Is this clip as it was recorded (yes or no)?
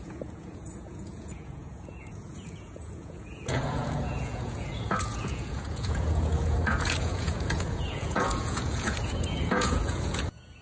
no